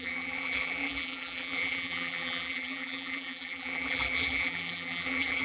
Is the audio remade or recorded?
remade